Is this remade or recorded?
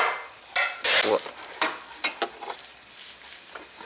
recorded